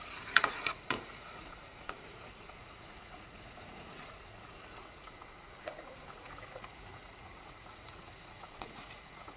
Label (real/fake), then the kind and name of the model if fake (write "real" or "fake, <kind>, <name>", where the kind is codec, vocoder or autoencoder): fake, vocoder, Vocos